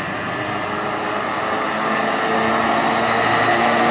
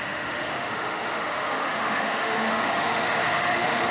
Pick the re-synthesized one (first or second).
second